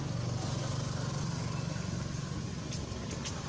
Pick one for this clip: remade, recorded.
recorded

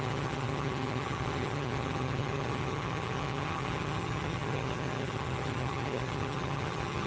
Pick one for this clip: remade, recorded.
remade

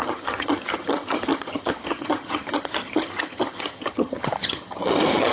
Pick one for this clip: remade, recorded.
remade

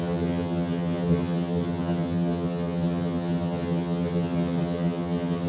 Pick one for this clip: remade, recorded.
remade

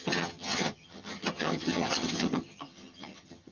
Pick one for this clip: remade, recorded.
remade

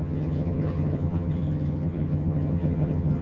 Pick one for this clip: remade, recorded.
remade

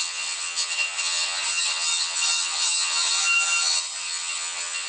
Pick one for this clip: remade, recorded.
remade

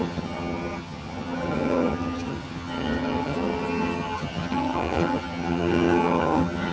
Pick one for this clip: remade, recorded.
remade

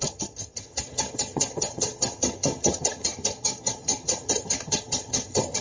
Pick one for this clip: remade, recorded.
remade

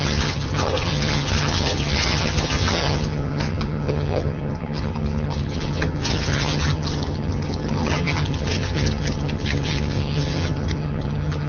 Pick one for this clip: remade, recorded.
remade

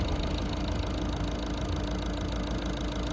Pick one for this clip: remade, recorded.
recorded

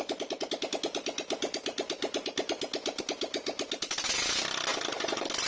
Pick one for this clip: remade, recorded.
recorded